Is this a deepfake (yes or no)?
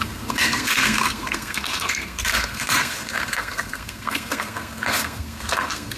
yes